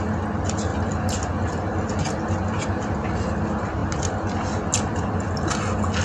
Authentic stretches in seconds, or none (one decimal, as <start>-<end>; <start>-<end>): 0.0-6.0